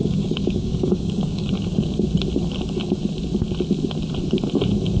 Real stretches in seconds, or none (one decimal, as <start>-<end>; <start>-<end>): 1.5-5.0